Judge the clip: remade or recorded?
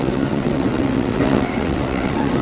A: remade